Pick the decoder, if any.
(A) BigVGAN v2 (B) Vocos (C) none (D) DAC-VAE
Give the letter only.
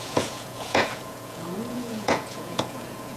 B